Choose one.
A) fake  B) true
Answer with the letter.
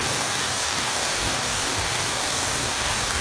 A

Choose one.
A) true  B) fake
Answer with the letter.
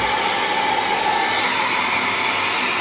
A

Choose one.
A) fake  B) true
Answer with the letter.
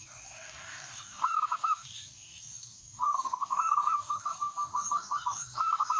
A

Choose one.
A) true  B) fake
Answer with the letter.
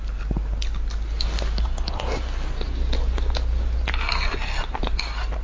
A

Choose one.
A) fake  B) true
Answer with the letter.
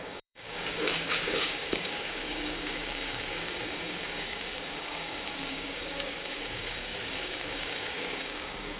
A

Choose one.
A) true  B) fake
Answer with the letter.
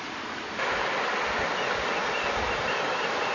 A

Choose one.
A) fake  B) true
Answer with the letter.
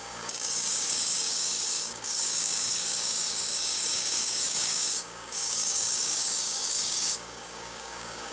A